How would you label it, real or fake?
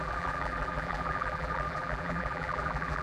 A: fake